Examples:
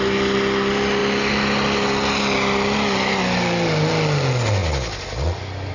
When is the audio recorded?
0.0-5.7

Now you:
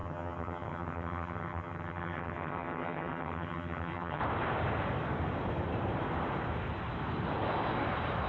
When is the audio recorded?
4.2-8.3

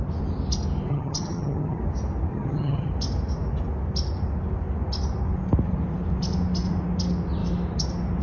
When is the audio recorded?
0.0-0.9; 1.8-2.3; 2.9-8.2

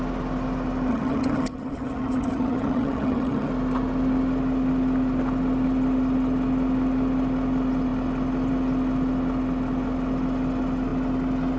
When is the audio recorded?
0.0-0.9; 3.5-11.6